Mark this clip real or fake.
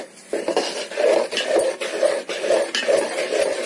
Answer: real